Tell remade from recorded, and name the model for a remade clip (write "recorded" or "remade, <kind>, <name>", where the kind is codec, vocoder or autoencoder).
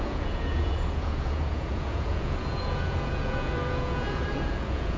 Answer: remade, vocoder, Vocos